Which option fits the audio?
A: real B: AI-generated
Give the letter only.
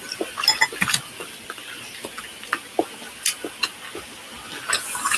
A